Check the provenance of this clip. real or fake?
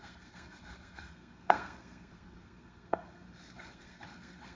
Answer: fake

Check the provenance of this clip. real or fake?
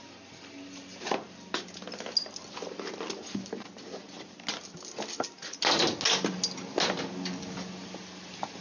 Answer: real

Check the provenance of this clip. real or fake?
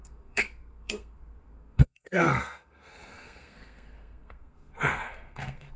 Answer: fake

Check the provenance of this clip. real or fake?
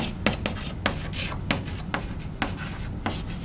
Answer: real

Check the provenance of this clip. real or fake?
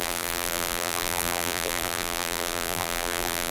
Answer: fake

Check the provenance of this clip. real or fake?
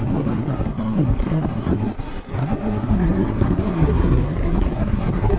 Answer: fake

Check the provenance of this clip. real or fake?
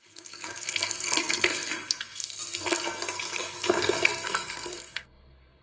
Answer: fake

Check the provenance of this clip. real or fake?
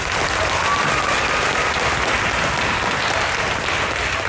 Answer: real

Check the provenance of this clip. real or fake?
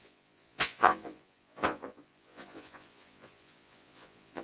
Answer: fake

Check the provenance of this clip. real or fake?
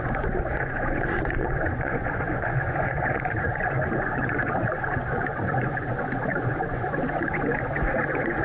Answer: fake